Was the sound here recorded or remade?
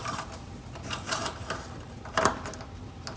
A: recorded